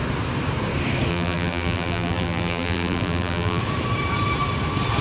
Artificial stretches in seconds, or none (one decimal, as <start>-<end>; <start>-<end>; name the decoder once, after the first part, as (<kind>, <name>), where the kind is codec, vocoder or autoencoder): 1.1-3.6 (vocoder, BigVGAN v2)